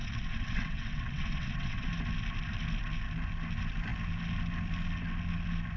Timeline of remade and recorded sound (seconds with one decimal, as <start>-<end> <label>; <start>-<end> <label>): 0.0-1.9 remade; 1.9-5.8 recorded